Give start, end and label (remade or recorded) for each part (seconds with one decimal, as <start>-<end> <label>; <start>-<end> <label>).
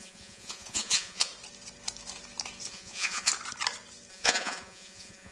0.0-1.3 remade; 1.3-2.7 recorded; 2.7-3.3 remade; 3.3-4.1 recorded; 4.1-5.3 remade